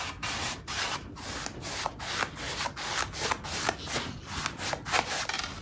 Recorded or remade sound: recorded